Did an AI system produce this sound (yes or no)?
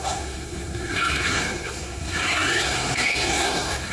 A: yes